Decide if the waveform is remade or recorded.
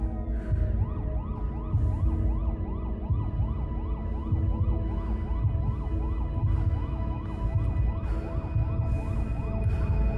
recorded